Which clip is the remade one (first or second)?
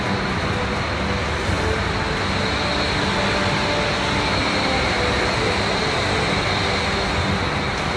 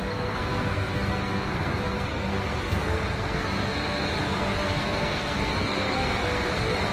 second